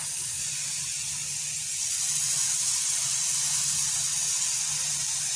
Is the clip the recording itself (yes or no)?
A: yes